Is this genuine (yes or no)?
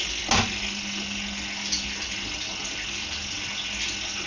yes